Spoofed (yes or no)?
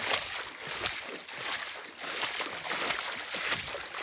no